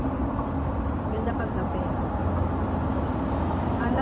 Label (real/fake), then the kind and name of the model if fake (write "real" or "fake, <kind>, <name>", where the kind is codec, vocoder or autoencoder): fake, vocoder, BigVGAN v2